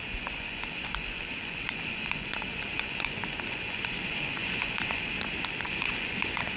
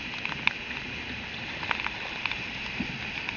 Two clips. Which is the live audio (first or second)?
second